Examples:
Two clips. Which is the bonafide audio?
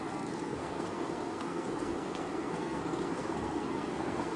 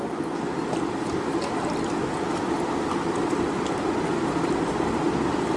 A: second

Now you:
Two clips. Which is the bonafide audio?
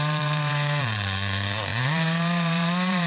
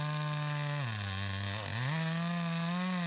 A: second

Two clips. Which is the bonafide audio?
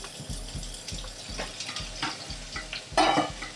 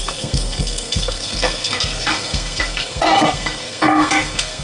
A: first